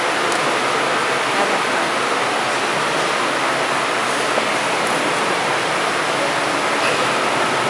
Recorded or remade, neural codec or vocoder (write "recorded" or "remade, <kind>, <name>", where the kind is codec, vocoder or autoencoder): recorded